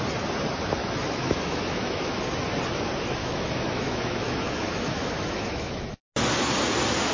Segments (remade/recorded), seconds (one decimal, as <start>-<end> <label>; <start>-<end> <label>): 0.0-0.8 recorded; 0.8-2.2 remade; 2.2-3.2 recorded; 3.2-5.8 remade; 5.8-7.1 recorded